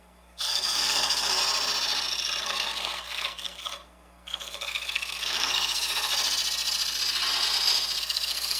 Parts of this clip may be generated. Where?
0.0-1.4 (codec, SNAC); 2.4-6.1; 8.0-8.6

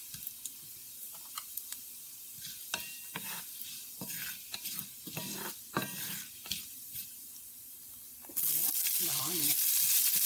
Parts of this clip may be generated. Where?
0.8-4.1 (vocoder, BigVGAN v2)

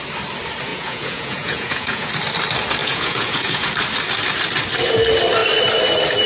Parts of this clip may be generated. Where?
0.7-2.1 (vocoder, Vocos); 2.8-3.7

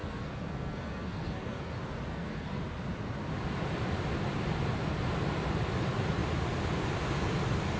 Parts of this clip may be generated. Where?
0.0-1.7 (codec, SNAC); 2.1-2.6

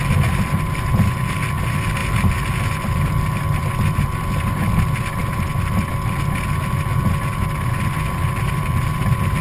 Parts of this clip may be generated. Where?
none

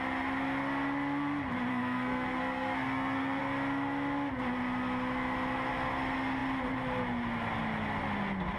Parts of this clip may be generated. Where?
1.7-3.4 (codec, SNAC)